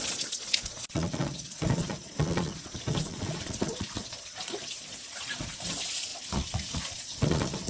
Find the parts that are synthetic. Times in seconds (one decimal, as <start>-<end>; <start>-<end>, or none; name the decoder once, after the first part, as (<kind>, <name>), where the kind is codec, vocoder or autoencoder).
0.0-7.7 (vocoder, Vocos)